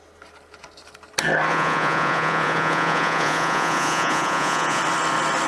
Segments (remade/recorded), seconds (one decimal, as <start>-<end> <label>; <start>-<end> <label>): 0.0-1.5 recorded; 1.5-4.8 remade; 4.8-5.5 recorded